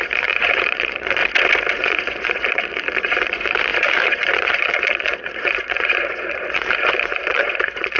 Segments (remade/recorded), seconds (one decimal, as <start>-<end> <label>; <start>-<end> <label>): 0.0-1.2 remade; 1.2-1.7 recorded; 1.7-8.0 remade